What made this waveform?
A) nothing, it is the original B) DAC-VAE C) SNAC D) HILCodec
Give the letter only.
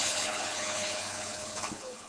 D